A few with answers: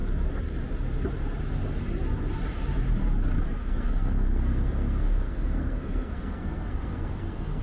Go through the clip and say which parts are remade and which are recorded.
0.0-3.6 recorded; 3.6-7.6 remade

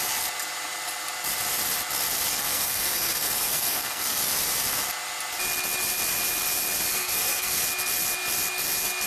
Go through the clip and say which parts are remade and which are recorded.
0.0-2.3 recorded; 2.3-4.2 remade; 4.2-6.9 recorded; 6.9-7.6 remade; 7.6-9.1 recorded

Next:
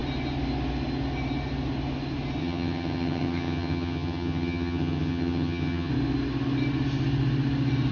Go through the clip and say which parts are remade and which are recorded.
0.0-2.4 recorded; 2.4-5.9 remade; 5.9-7.9 recorded

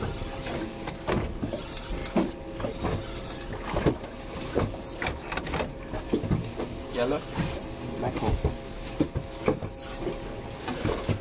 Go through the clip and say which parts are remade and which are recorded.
0.0-11.2 recorded